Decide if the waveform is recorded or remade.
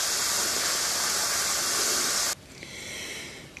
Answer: recorded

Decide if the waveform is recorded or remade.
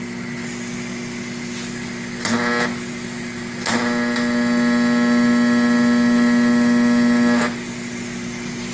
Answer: recorded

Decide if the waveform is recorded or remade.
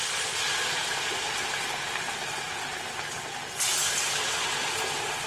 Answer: recorded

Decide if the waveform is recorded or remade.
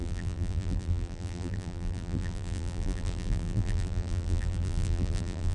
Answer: remade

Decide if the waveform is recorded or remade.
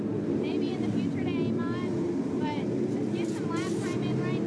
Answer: remade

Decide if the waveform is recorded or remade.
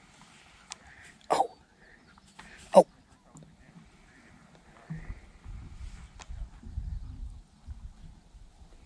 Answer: recorded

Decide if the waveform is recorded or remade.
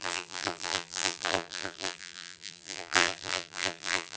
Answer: remade